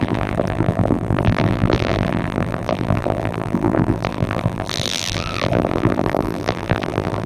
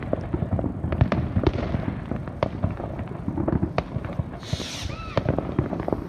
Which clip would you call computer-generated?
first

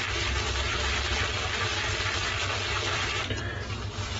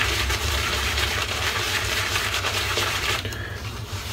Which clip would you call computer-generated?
second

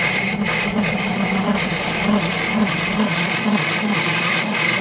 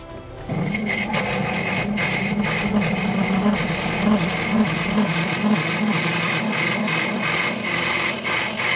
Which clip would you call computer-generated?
first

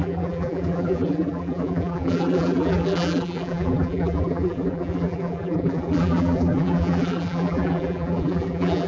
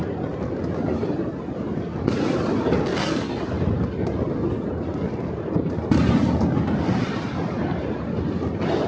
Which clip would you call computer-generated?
first